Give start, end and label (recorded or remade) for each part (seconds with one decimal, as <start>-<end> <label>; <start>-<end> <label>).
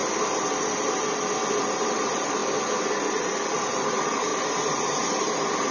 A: 0.0-1.7 recorded; 1.7-2.4 remade; 2.4-3.5 recorded; 3.5-5.7 remade